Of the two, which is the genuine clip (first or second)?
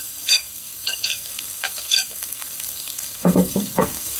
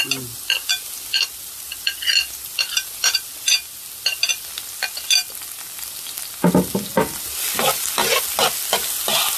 second